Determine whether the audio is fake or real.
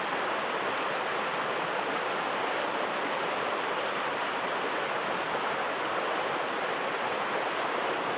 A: real